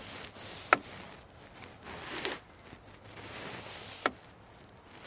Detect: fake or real real